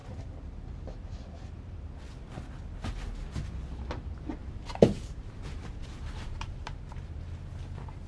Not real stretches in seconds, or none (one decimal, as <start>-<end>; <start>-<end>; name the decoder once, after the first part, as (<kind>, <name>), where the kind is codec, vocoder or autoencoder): 4.4-7.2 (vocoder, BigVGAN v2)